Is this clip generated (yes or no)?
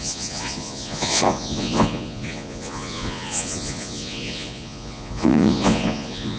yes